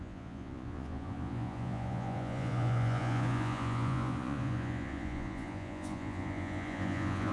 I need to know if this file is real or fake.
fake